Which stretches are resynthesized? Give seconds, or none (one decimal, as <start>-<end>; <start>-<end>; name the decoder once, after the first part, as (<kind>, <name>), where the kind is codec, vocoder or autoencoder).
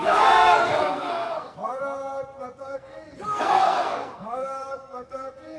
0.0-1.8 (codec, SNAC); 2.6-5.6